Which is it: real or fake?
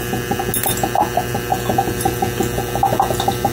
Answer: real